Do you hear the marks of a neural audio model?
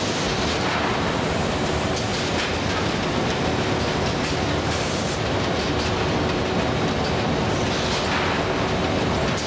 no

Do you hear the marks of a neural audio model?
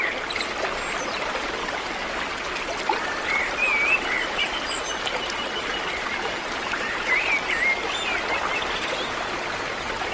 no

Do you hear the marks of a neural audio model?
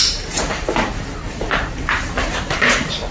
no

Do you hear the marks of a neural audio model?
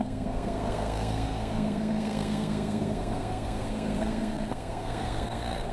yes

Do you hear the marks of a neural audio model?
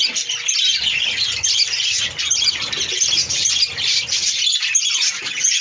no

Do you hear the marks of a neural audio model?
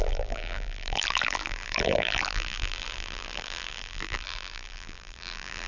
yes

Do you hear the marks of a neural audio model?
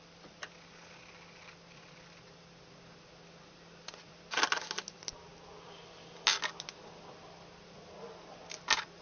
no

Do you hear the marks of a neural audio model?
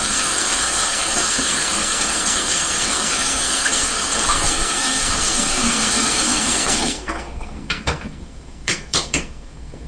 yes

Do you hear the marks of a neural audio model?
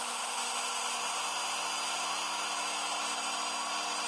no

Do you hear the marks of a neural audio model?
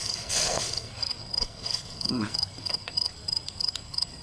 yes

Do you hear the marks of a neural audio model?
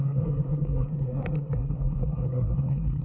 yes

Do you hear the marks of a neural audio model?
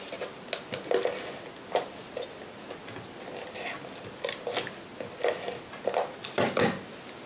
no